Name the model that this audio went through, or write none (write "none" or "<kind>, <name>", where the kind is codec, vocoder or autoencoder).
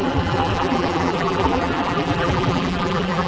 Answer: vocoder, BigVGAN v2